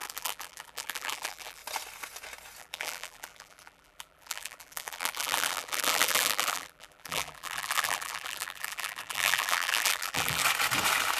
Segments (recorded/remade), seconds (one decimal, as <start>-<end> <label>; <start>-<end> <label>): 0.0-1.6 remade; 1.6-2.6 recorded; 2.6-10.4 remade; 10.4-11.2 recorded